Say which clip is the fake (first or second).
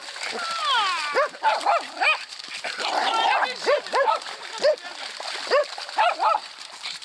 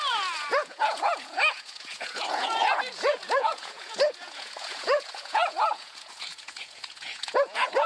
second